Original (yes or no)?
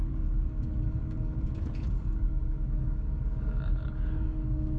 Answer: no